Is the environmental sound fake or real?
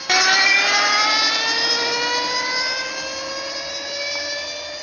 real